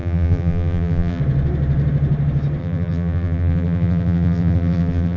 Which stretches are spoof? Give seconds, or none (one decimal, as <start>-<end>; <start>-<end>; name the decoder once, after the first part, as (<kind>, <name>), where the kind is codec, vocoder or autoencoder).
0.0-1.2 (vocoder, BigVGAN v2); 2.6-5.2